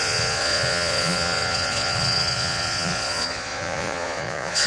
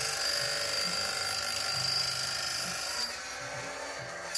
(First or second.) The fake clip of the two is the first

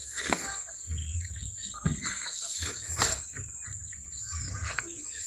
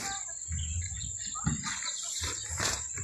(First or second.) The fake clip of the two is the first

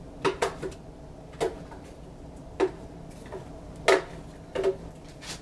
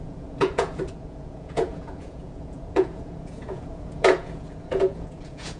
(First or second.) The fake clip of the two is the second